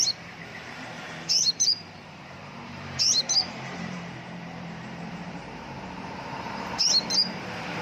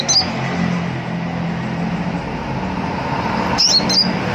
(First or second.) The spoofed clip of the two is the first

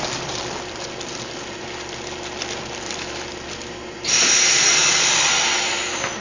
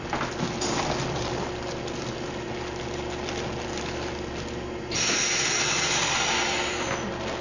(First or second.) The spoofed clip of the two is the first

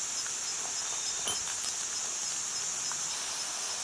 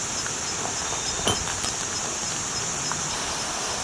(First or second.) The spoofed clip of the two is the second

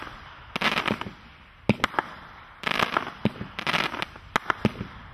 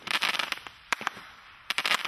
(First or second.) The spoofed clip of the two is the second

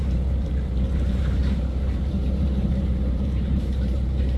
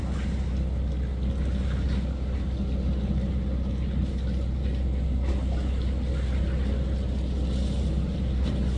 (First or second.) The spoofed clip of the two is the first